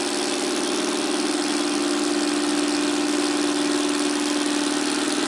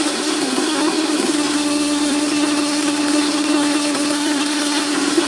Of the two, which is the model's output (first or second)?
second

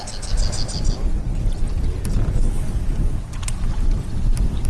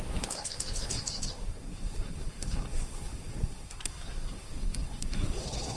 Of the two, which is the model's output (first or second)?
second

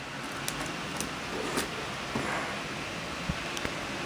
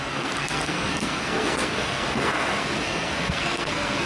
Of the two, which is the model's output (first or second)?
second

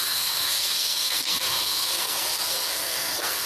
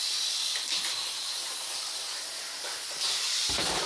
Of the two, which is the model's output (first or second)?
first